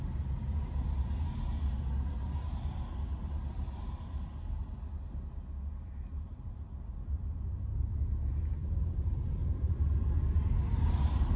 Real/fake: real